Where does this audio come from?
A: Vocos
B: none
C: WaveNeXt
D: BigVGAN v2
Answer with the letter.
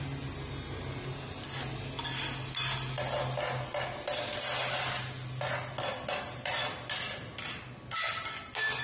B